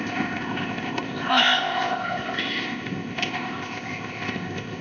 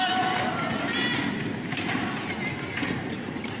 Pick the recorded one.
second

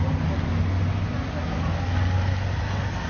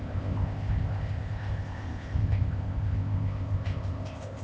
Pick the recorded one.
first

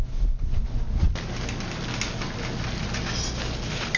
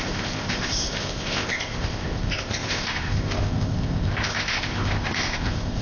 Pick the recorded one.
first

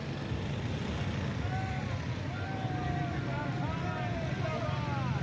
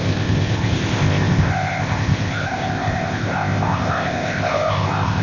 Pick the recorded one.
first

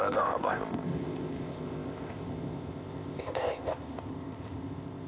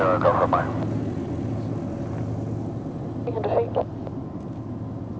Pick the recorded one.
second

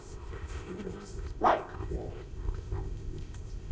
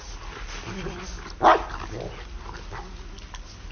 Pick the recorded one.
second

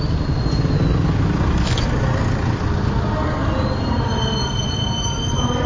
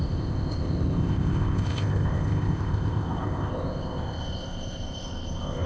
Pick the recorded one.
first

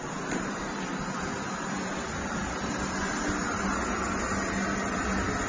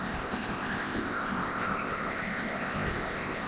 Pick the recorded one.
first